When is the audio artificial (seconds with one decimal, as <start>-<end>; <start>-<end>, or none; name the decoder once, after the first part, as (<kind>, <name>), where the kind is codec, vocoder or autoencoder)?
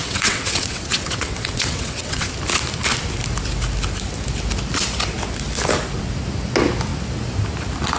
0.0-2.3 (vocoder, WaveNeXt)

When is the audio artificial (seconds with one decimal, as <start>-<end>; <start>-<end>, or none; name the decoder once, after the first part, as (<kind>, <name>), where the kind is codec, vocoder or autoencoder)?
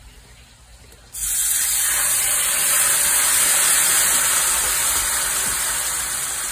none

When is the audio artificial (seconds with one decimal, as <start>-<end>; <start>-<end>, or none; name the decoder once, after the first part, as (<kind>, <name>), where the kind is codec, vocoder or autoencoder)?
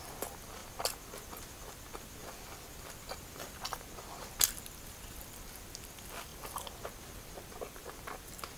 2.2-3.6 (vocoder, BigVGAN v2)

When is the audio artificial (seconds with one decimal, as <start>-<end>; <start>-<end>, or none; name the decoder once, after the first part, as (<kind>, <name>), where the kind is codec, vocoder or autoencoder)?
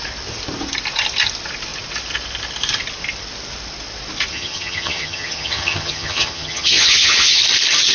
4.3-7.4 (vocoder, HiFi-GAN)